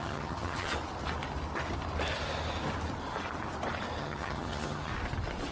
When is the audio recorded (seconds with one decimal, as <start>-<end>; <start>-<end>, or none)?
0.7-4.0; 4.9-5.5